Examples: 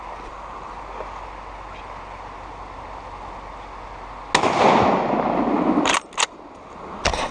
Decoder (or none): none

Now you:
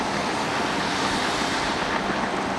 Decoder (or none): none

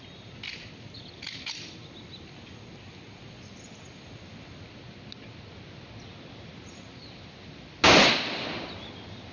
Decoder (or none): none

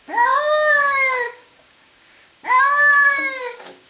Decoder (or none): codec, DAC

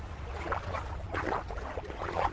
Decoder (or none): vocoder, Vocos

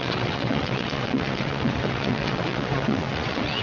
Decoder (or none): vocoder, WaveNeXt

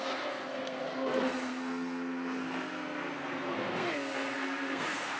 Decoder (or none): codec, SNAC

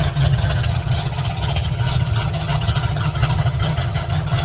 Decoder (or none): vocoder, HiFi-GAN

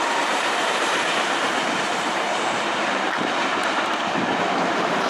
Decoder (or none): vocoder, BigVGAN v2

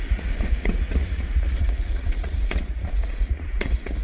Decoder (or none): vocoder, Vocos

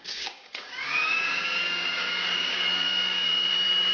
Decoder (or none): codec, DAC